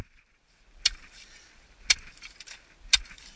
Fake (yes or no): no